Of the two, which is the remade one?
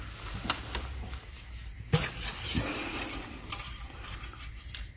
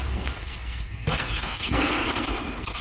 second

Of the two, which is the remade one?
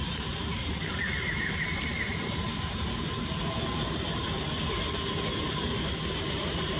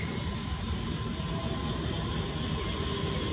first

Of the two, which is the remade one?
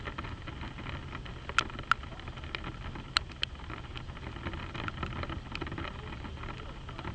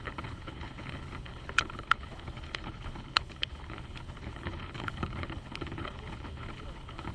second